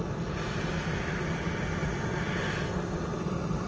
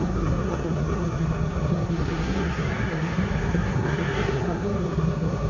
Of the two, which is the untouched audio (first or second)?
first